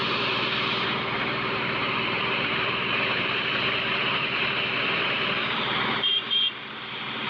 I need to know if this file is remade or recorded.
remade